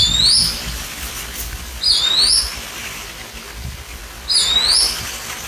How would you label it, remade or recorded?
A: recorded